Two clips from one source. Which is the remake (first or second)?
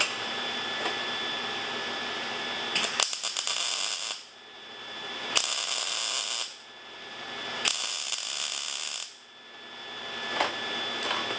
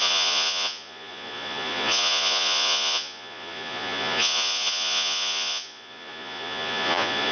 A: second